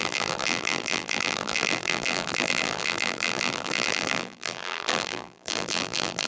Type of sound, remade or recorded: remade